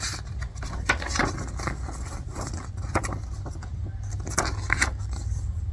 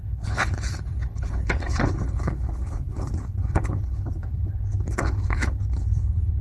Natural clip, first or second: first